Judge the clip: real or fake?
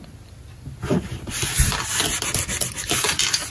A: real